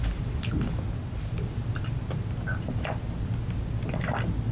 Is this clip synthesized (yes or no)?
no